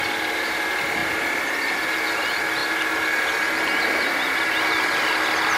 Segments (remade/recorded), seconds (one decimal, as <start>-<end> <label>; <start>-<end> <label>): 0.0-5.6 recorded